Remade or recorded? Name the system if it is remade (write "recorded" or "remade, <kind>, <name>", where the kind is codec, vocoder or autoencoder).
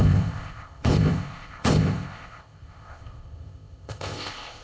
remade, codec, ZipCodec